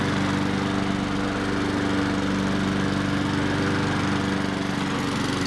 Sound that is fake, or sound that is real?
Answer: real